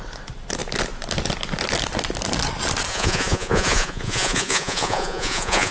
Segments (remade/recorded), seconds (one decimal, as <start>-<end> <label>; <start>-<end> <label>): 0.0-2.9 recorded; 2.9-5.7 remade